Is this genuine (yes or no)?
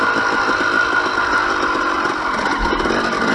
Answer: yes